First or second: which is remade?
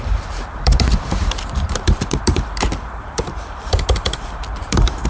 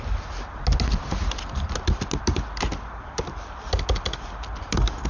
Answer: first